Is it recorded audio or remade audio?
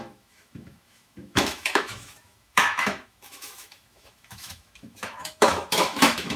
remade